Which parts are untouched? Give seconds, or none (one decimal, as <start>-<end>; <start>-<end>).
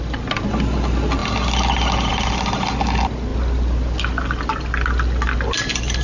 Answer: 0.0-6.0